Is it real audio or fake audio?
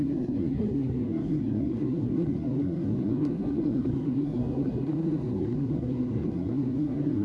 fake